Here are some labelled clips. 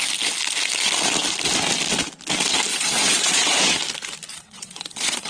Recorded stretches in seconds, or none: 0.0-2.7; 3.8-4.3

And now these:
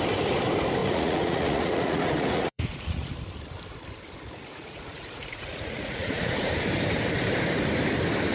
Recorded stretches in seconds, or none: 0.0-0.8; 3.1-4.5; 6.5-8.3

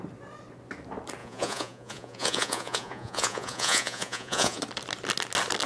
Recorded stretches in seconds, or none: 0.0-1.2; 4.6-5.7

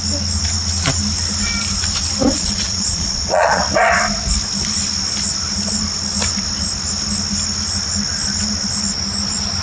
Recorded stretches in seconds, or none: 0.0-2.3; 3.6-9.6

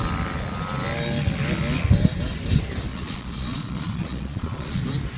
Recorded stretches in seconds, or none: 0.0-2.9; 4.8-5.2